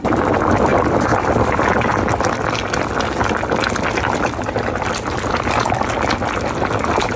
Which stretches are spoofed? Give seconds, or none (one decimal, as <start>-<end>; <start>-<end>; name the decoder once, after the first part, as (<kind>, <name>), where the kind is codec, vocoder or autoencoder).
none